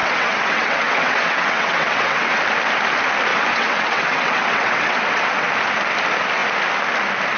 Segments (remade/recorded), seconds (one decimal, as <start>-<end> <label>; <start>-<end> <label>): 0.0-2.4 remade; 2.4-3.3 recorded; 3.3-5.5 remade; 5.5-7.4 recorded